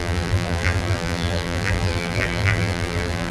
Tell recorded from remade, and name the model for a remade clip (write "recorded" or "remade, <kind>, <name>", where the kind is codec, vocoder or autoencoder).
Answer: remade, vocoder, BigVGAN v2